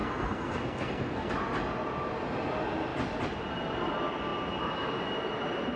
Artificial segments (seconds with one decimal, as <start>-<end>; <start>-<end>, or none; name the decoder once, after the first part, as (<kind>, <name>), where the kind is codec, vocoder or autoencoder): 0.0-1.3 (codec, SNAC)

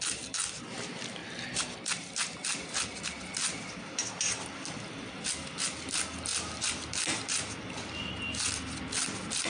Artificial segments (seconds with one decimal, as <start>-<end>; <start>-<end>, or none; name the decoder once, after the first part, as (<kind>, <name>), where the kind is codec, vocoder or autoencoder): none

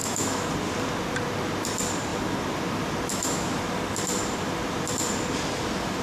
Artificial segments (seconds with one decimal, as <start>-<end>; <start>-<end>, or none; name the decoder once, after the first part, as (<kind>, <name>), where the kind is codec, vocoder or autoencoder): 0.0-0.5 (autoencoder, DAC-VAE); 3.1-3.6